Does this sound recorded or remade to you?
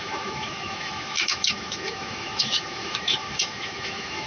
remade